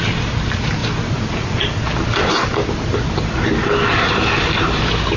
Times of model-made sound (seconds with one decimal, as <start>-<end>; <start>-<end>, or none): none